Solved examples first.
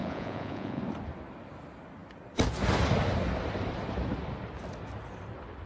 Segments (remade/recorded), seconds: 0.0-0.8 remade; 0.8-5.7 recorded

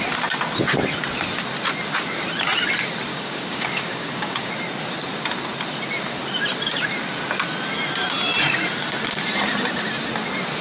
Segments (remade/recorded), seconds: 0.0-3.1 recorded; 3.1-4.5 remade; 4.5-10.6 recorded

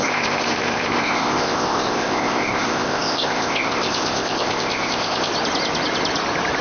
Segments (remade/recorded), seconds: 0.0-5.3 remade; 5.3-6.6 recorded

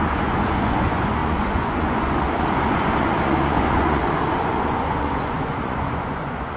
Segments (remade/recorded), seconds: 0.0-6.6 remade

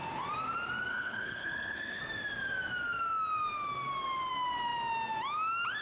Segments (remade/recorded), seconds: 0.0-0.9 recorded; 0.9-2.0 remade; 2.0-5.8 recorded

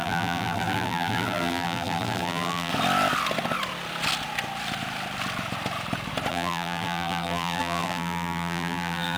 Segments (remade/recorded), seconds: 0.0-2.7 remade; 2.7-6.3 recorded; 6.3-9.2 remade

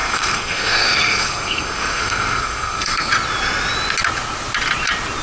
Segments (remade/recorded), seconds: 0.0-3.1 remade; 3.1-5.2 recorded